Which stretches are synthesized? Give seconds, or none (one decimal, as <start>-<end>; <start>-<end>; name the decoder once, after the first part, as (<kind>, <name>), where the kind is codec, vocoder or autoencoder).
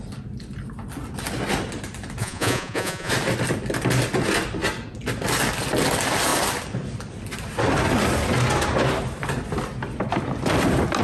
2.2-3.1 (vocoder, Vocos)